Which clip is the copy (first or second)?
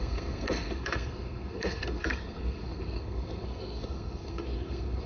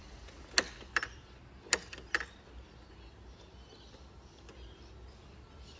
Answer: first